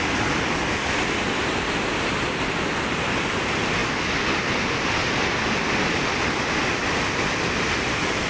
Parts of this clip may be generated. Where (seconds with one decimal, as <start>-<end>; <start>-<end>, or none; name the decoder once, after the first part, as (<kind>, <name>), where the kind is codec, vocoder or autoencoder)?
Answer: none